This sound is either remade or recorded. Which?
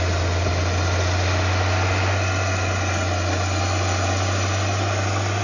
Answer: recorded